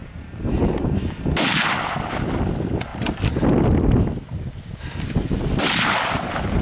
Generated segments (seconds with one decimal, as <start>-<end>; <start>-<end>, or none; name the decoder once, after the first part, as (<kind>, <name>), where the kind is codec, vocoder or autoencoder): 0.0-1.6 (vocoder, BigVGAN v2)